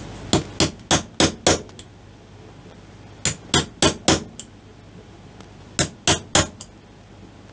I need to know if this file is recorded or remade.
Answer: recorded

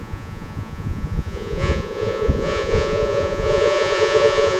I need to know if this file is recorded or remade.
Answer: remade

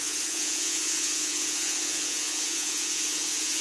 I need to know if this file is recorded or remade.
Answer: remade